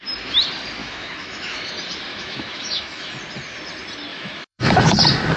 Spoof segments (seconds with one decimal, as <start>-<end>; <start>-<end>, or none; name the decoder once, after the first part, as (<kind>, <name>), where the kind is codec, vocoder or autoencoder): 0.8-1.7 (autoencoder, DAC-VAE); 2.1-3.2; 4.1-5.0